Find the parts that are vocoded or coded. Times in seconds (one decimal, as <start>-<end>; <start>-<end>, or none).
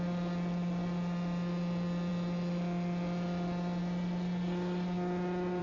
none